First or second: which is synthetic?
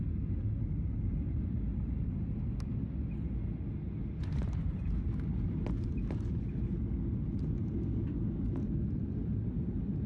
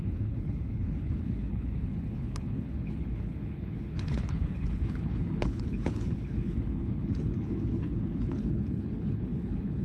second